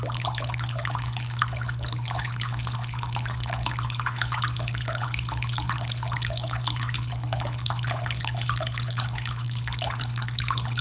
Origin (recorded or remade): remade